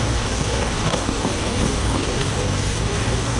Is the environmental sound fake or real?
fake